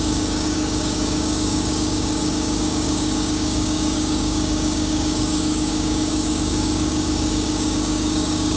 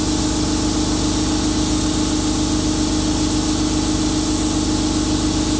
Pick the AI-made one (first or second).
first